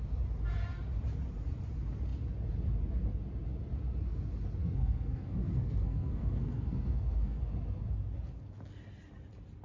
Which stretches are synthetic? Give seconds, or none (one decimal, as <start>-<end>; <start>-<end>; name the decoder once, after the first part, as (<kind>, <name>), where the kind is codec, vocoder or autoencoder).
4.6-7.4 (codec, SNAC)